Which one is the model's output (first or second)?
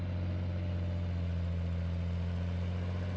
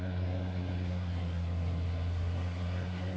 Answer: second